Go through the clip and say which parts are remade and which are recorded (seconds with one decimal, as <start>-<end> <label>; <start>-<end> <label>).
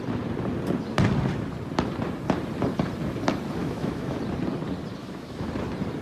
0.0-3.6 recorded; 3.6-4.2 remade; 4.2-5.0 recorded; 5.0-5.5 remade; 5.5-6.0 recorded